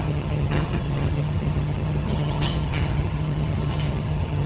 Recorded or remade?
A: remade